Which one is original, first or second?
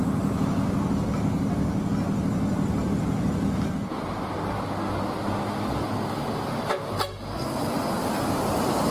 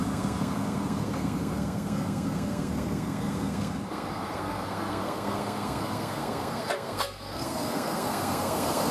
first